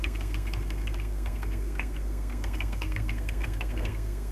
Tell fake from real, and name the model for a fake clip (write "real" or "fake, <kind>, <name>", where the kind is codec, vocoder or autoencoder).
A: fake, codec, SNAC